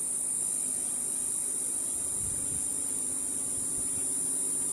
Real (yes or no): yes